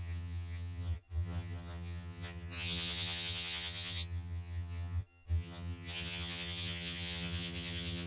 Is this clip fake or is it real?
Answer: fake